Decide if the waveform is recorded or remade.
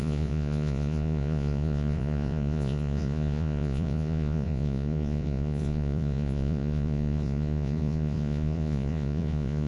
remade